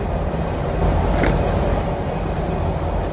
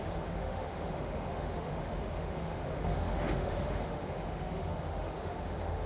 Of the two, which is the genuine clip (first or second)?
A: first